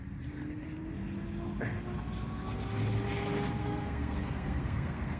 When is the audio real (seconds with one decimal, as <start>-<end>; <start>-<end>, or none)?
0.0-3.6